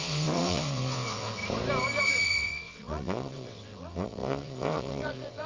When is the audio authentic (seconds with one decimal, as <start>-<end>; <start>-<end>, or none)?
1.4-2.0